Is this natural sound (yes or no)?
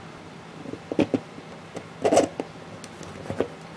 yes